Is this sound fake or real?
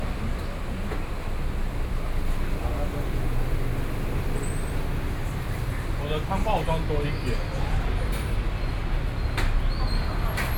real